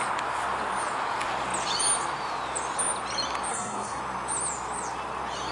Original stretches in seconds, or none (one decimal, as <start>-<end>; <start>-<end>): 0.0-3.5; 4.0-5.5